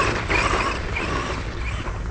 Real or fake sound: real